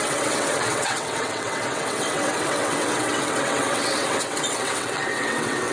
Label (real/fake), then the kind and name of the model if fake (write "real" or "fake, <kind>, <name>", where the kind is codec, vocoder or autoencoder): fake, vocoder, WaveNeXt